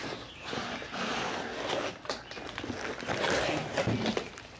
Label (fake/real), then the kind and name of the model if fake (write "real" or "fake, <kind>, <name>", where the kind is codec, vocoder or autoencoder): real